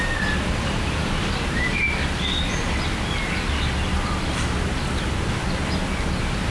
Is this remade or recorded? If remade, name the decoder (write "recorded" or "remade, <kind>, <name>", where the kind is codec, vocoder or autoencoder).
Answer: recorded